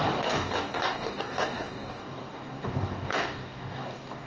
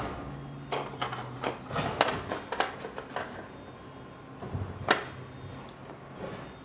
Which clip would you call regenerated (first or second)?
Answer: first